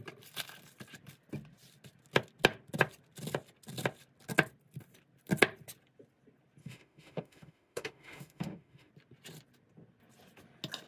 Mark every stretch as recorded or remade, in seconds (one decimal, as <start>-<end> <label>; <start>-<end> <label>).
0.0-6.6 recorded; 6.6-8.9 remade; 8.9-10.9 recorded